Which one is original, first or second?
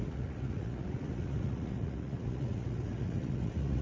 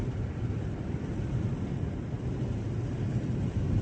second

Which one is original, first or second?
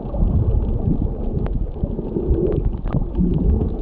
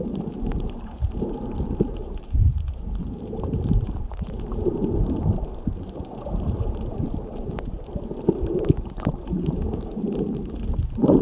first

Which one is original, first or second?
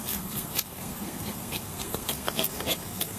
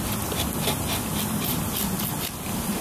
second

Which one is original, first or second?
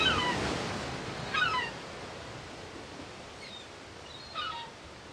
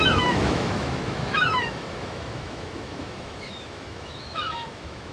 first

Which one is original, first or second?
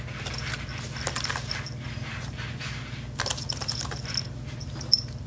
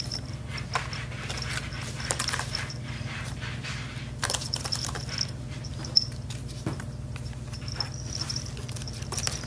first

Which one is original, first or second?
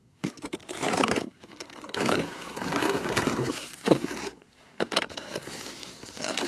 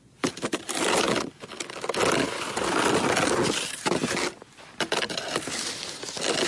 second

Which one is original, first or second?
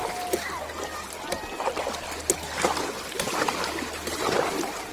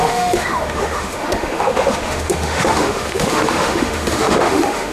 first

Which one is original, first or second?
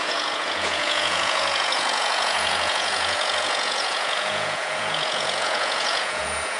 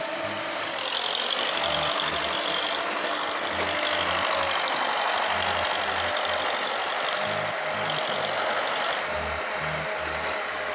second